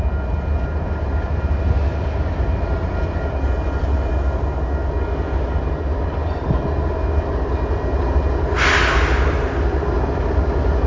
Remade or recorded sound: recorded